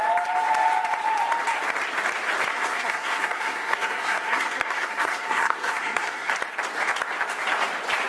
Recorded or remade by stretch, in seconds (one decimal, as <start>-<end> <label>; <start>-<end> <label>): 0.0-2.5 recorded; 2.5-6.3 remade; 6.3-8.1 recorded